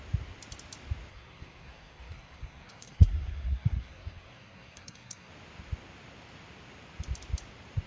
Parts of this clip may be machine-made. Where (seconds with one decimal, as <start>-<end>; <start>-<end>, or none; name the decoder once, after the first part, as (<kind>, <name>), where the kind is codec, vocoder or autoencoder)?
1.1-5.3 (codec, SNAC)